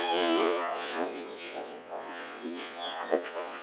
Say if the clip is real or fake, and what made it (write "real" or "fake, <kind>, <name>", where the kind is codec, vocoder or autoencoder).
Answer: fake, vocoder, Vocos